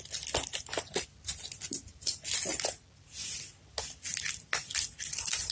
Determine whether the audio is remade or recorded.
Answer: recorded